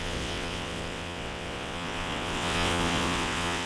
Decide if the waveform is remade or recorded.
remade